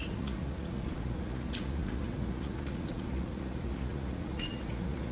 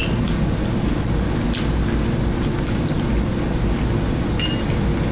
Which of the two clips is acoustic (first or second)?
second